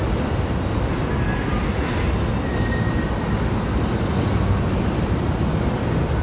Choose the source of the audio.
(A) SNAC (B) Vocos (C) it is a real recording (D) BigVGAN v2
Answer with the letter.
C